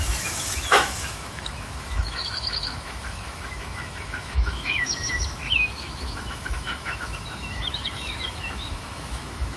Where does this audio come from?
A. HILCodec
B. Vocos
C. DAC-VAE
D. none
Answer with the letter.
C